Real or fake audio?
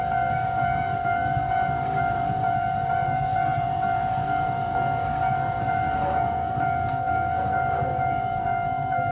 fake